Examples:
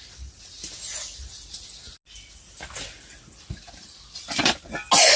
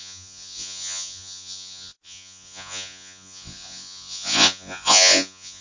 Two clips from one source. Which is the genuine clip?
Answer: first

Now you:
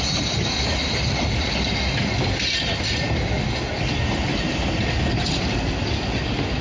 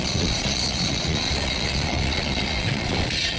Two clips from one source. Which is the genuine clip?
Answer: first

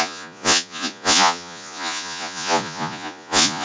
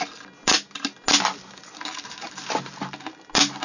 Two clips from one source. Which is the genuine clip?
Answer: second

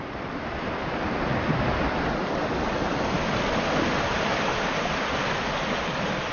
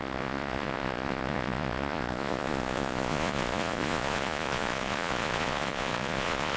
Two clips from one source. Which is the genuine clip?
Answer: first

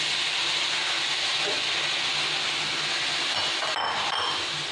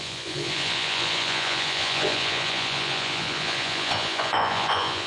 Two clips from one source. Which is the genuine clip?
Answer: first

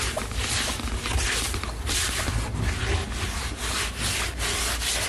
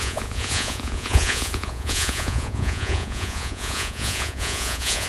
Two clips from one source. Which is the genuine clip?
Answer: first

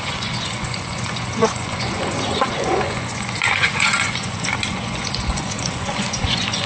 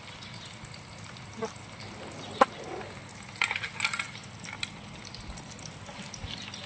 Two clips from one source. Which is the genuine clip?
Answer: second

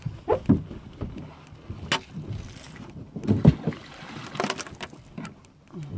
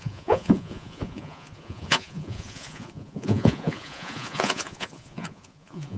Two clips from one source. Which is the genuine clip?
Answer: first